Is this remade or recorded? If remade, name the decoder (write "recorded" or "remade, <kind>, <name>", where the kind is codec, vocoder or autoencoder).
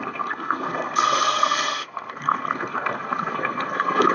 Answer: remade, codec, SNAC